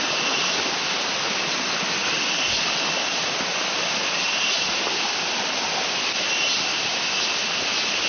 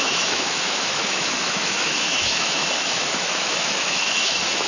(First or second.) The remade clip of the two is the second